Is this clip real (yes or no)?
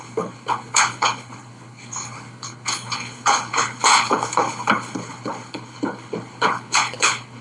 no